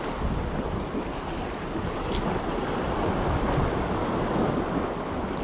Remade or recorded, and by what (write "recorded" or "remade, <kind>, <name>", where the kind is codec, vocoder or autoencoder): recorded